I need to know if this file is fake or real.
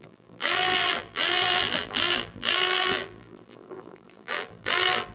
fake